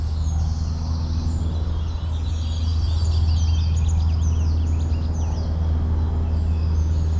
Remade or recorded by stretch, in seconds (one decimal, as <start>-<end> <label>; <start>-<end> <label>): 0.0-7.2 recorded